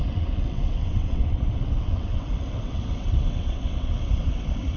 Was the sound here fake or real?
fake